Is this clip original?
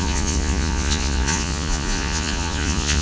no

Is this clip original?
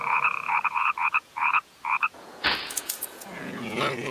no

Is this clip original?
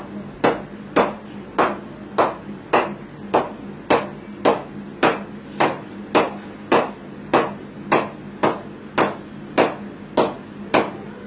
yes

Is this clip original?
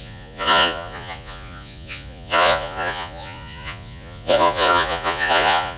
no